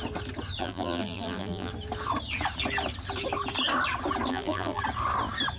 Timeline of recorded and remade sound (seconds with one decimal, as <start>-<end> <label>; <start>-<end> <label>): 0.0-0.6 recorded; 0.6-1.7 remade; 1.7-4.3 recorded; 4.3-4.8 remade; 4.8-5.6 recorded